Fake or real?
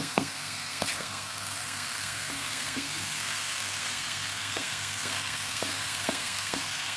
fake